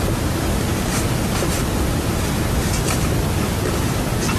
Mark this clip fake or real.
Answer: real